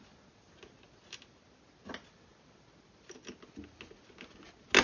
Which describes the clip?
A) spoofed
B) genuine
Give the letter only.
B